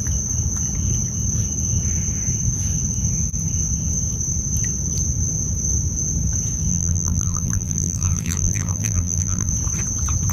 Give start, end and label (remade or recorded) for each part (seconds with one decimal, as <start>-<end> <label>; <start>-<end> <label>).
0.0-6.7 recorded; 6.7-9.5 remade; 9.5-10.3 recorded